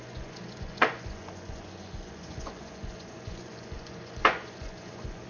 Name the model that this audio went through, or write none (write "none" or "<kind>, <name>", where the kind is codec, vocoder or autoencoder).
vocoder, Vocos